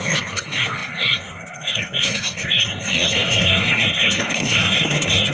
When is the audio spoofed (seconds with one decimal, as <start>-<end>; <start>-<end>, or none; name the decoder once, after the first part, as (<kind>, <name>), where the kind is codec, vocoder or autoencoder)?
0.0-5.3 (codec, SNAC)